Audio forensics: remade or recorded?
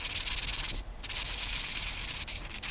recorded